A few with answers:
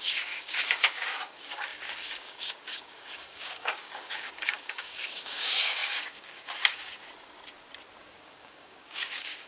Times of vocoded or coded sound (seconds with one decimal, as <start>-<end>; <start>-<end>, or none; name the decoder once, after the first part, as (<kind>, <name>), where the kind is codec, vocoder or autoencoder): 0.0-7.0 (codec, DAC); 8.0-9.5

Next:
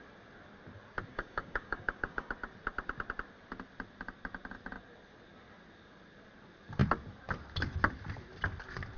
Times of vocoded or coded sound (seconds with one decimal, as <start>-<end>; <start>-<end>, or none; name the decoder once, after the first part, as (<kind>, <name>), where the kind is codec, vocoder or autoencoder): 1.1-2.3 (codec, DAC)

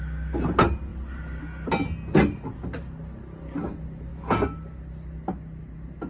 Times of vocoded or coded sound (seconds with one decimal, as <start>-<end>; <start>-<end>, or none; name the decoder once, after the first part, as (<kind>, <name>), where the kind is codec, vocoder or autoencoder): none